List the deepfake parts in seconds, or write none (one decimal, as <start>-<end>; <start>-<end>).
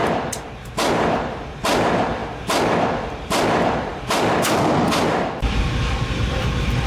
1.3-2.2; 2.7-6.9